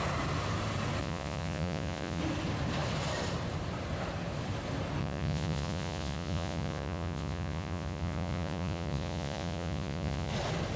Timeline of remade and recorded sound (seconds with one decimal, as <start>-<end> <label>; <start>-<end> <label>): 0.0-1.0 recorded; 1.0-2.2 remade; 2.2-5.0 recorded; 5.0-10.3 remade; 10.3-10.8 recorded